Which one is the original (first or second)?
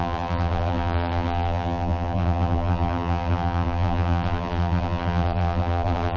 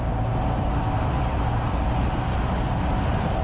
second